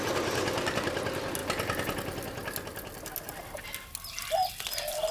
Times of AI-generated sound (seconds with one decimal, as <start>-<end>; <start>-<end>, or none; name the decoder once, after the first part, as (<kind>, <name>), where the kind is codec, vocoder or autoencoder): none